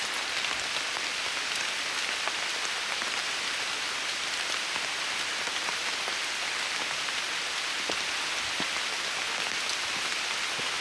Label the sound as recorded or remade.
recorded